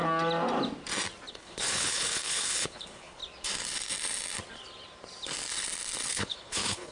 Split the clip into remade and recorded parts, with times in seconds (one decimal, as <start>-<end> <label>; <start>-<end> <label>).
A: 0.0-1.3 recorded; 1.3-3.2 remade; 3.2-6.1 recorded; 6.1-6.9 remade